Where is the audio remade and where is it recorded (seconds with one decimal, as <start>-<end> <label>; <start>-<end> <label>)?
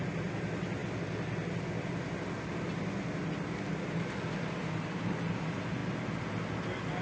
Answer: 0.0-7.0 recorded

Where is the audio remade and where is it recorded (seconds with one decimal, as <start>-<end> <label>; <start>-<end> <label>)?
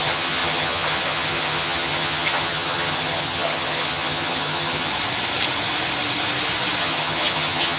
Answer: 0.0-4.9 remade; 4.9-6.8 recorded; 6.8-7.8 remade